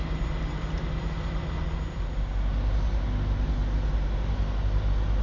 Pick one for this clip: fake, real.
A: real